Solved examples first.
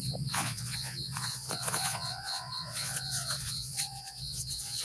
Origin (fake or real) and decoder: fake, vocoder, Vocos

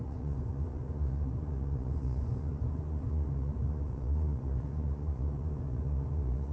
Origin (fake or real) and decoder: fake, vocoder, Vocos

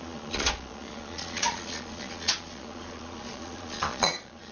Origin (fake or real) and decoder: fake, vocoder, Vocos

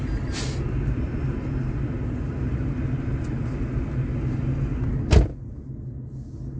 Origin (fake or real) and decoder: real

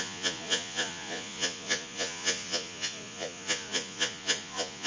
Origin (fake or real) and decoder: fake, vocoder, Vocos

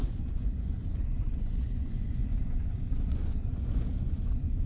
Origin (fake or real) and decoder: fake, vocoder, Vocos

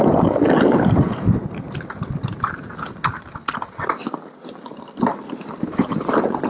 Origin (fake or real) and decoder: real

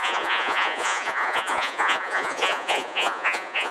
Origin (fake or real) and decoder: fake, vocoder, Vocos